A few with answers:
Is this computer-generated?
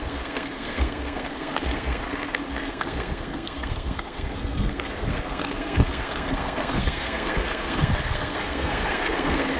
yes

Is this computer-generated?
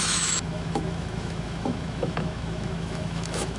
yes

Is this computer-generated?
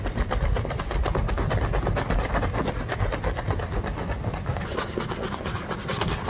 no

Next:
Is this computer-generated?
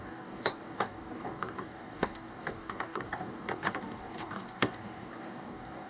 yes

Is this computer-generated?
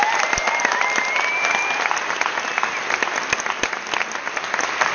no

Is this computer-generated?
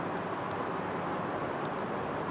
yes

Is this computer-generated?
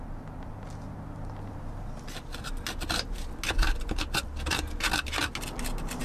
no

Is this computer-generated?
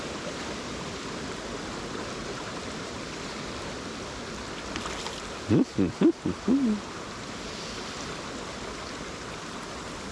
no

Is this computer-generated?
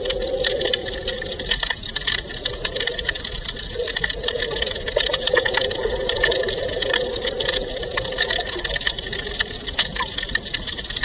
no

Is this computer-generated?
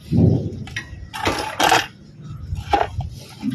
no